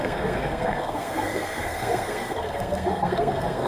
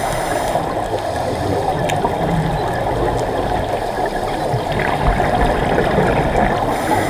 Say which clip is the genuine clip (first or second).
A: second